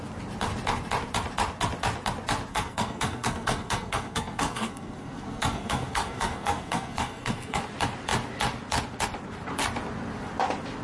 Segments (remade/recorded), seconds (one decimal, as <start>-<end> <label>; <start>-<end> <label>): 0.0-2.5 recorded; 2.5-7.6 remade; 7.6-10.8 recorded